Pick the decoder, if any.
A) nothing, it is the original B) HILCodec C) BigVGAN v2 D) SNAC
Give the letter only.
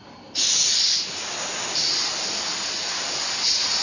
A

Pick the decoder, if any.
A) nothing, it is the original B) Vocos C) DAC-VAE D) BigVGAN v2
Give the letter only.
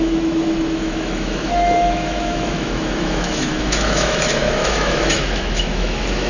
C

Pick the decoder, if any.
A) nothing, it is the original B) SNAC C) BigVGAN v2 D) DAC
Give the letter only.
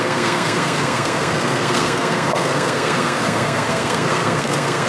B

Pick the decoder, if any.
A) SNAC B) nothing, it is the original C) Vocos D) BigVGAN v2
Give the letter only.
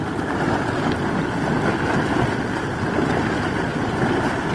B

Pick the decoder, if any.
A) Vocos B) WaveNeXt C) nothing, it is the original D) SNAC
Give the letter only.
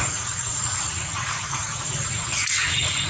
A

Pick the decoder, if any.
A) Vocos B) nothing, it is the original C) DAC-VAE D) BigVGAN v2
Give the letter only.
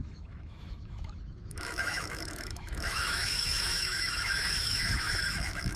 C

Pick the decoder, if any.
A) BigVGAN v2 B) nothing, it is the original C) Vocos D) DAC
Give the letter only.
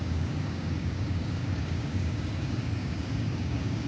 D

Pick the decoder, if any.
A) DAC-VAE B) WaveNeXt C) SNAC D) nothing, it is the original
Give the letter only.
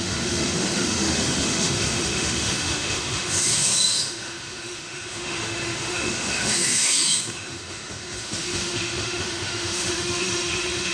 A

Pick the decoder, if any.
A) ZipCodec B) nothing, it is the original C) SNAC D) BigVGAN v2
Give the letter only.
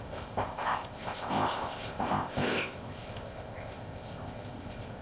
A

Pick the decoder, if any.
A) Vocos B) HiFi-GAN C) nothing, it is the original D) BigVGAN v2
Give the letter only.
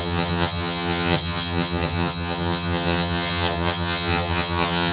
B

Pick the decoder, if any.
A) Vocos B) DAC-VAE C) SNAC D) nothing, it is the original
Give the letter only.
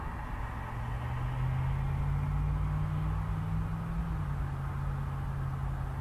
D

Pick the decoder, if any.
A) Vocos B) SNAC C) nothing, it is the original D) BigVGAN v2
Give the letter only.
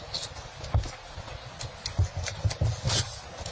C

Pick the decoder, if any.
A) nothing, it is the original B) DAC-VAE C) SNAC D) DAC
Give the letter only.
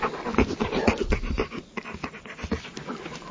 A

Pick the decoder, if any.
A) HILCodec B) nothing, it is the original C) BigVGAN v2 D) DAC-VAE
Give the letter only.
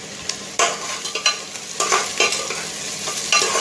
B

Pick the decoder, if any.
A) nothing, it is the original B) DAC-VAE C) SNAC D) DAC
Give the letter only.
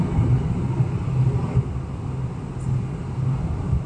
A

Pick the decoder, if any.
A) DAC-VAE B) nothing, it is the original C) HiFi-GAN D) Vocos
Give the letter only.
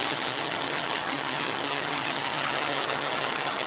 C